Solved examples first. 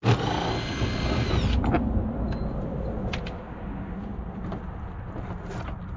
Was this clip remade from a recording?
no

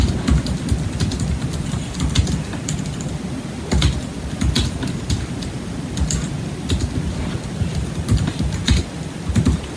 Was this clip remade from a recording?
no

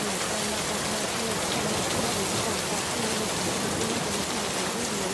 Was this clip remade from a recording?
no